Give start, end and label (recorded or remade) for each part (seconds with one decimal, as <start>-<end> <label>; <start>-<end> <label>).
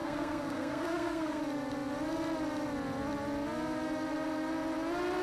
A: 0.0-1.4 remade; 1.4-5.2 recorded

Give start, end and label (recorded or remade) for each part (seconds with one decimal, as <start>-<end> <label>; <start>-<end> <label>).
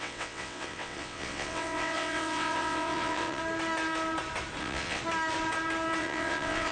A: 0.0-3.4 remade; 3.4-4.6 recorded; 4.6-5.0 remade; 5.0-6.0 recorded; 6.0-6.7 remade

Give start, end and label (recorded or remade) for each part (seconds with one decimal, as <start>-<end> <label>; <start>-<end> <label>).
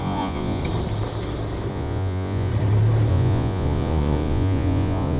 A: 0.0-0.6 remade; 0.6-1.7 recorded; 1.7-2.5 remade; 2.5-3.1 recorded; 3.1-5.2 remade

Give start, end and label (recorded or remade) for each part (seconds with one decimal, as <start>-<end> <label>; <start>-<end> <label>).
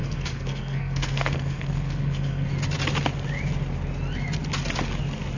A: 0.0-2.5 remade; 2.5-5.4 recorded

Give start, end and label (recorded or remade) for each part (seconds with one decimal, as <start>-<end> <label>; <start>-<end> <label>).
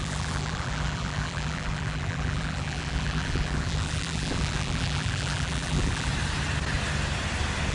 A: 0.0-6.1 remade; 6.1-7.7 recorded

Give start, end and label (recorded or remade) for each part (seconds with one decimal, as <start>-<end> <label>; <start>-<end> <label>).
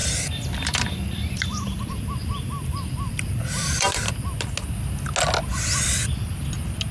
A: 0.0-4.1 remade; 4.1-5.5 recorded; 5.5-6.3 remade; 6.3-6.9 recorded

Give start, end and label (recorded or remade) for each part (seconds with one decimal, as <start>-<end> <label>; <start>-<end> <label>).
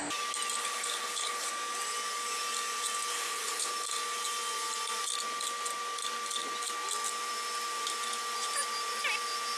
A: 0.0-0.6 recorded; 0.6-1.5 remade; 1.5-3.1 recorded; 3.1-3.7 remade; 3.7-9.6 recorded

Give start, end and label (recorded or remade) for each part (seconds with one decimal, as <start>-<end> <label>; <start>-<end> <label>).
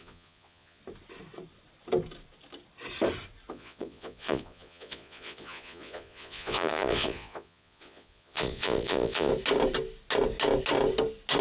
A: 0.0-0.8 remade; 0.8-3.5 recorded; 3.5-9.3 remade; 9.3-11.4 recorded